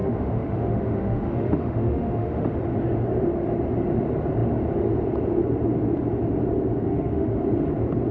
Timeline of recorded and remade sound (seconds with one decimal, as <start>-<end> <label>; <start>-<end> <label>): 0.0-2.6 remade; 2.6-6.8 recorded; 6.8-7.4 remade; 7.4-8.1 recorded